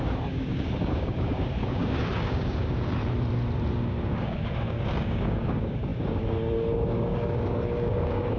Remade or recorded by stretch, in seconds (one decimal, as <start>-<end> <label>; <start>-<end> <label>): 0.0-3.0 remade; 3.0-3.7 recorded; 3.7-8.4 remade